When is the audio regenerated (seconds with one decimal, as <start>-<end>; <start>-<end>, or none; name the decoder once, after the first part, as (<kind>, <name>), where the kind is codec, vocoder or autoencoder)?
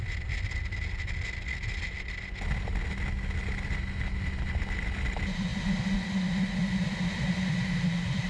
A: none